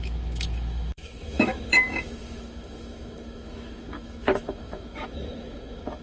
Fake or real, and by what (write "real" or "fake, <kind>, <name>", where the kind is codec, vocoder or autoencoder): fake, autoencoder, DAC-VAE